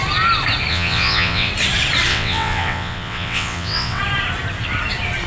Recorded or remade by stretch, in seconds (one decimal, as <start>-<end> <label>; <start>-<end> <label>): 0.0-0.7 recorded; 0.7-1.5 remade; 1.5-2.1 recorded; 2.1-4.0 remade; 4.0-5.3 recorded